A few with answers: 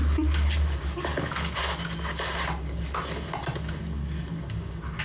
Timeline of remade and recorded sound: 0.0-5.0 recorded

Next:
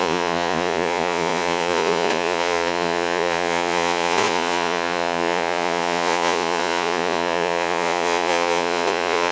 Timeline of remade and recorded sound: 0.0-9.3 remade

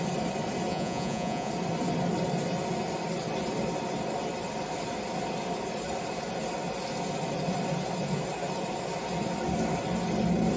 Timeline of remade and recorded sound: 0.0-0.7 recorded; 0.7-1.5 remade; 1.5-10.6 recorded

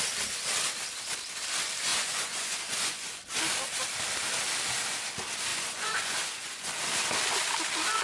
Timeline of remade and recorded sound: 0.0-1.9 recorded; 1.9-3.2 remade; 3.2-5.5 recorded; 5.5-6.7 remade; 6.7-8.0 recorded

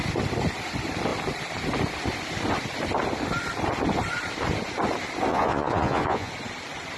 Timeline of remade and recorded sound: 0.0-5.3 recorded; 5.3-6.3 remade; 6.3-7.0 recorded

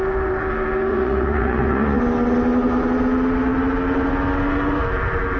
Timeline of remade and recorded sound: 0.0-0.9 recorded; 0.9-2.0 remade; 2.0-5.4 recorded

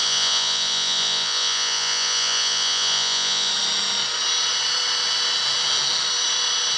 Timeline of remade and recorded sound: 0.0-3.5 remade; 3.5-6.8 recorded

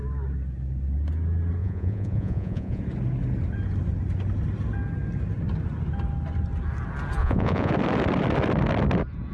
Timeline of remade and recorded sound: 0.0-1.6 recorded; 1.6-2.8 remade; 2.8-7.2 recorded; 7.2-7.7 remade; 7.7-9.3 recorded